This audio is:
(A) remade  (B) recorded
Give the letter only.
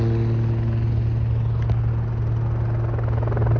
B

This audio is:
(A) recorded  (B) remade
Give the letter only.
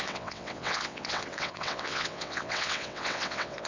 B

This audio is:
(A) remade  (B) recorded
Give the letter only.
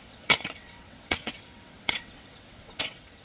A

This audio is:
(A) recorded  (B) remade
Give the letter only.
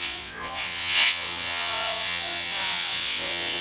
B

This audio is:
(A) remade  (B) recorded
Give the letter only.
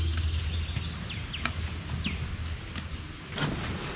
B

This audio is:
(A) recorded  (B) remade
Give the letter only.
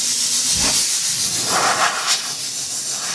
A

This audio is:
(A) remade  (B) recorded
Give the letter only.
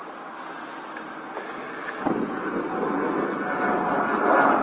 B